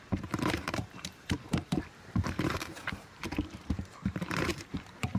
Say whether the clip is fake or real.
fake